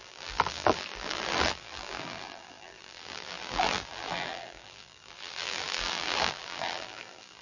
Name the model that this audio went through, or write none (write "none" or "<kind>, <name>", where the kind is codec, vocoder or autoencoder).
vocoder, BigVGAN v2